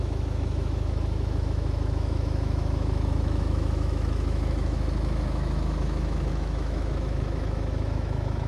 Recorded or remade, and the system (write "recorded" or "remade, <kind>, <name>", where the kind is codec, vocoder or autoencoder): remade, autoencoder, DAC-VAE